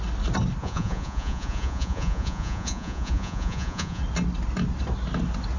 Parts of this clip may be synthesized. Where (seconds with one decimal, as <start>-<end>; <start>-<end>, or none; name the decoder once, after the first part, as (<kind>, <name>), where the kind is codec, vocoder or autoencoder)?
0.6-4.0 (vocoder, Vocos)